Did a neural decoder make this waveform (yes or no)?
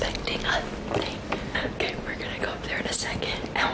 no